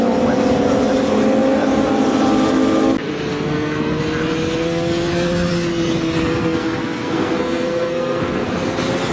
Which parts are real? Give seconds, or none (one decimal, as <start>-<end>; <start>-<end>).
0.0-3.3; 4.0-6.3; 8.5-9.1